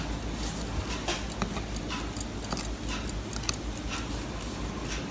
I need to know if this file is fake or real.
real